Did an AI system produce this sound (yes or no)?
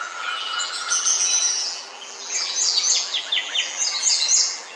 yes